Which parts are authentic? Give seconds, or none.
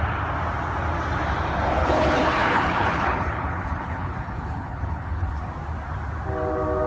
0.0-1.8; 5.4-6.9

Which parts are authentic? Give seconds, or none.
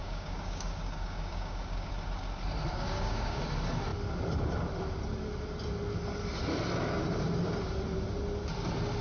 1.9-2.7; 3.4-9.0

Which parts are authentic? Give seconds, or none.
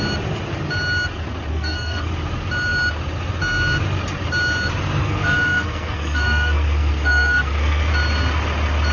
0.0-1.5; 2.1-5.0; 7.9-8.9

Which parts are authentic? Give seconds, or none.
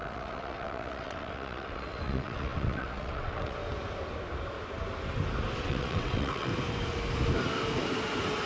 3.6-5.6; 6.5-8.5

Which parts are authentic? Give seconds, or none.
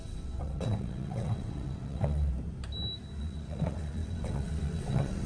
2.3-3.2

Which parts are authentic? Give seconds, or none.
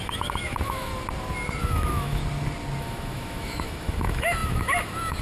0.9-1.6; 2.2-2.8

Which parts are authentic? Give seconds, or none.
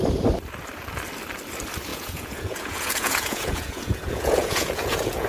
0.0-1.9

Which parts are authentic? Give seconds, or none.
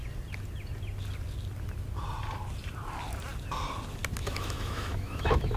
0.0-4.2